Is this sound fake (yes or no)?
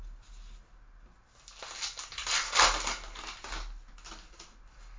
no